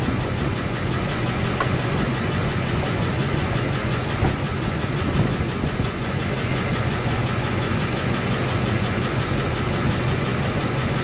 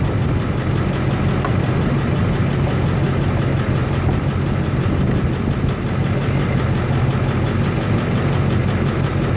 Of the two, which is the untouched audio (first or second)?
second